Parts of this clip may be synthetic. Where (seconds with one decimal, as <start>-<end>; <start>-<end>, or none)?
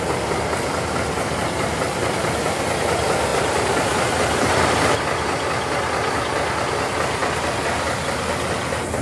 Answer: 3.3-4.5